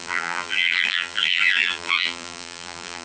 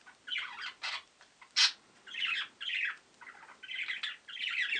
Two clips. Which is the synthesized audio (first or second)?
first